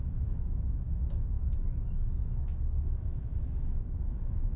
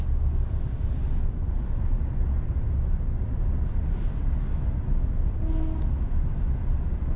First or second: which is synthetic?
first